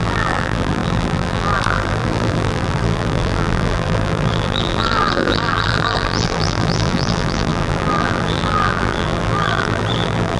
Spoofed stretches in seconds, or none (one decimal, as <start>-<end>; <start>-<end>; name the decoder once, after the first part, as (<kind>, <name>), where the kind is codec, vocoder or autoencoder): 0.0-10.4 (vocoder, BigVGAN v2)